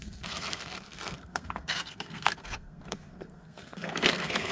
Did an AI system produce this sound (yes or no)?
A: yes